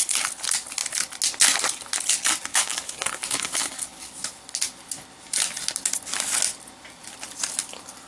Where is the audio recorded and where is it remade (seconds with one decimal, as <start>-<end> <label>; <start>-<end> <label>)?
0.0-2.5 recorded; 2.5-4.3 remade; 4.3-8.1 recorded